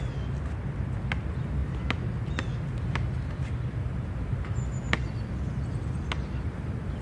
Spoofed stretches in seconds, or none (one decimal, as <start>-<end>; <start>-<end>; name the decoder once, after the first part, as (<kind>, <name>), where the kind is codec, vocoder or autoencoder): none